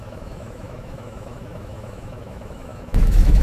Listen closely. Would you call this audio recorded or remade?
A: remade